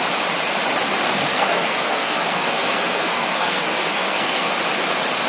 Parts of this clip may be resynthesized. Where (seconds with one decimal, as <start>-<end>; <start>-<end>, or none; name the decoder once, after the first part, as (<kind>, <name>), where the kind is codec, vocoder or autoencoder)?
1.3-4.5 (codec, SNAC)